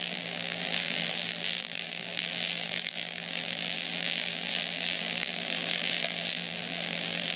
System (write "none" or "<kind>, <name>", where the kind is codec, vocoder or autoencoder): vocoder, BigVGAN v2